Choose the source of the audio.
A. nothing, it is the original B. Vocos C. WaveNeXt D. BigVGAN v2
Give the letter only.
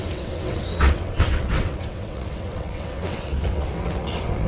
C